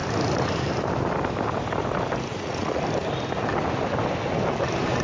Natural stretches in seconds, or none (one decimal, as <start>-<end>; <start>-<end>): 0.0-2.3; 2.8-5.0